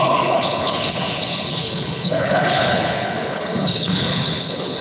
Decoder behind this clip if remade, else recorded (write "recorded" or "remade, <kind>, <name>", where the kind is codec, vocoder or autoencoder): remade, codec, HILCodec